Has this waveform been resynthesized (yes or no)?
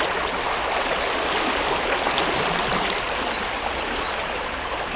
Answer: no